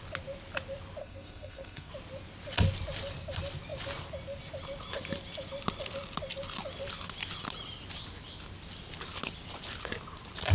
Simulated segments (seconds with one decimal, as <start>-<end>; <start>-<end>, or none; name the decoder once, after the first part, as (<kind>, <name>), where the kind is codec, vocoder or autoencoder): 1.0-1.9 (codec, SNAC)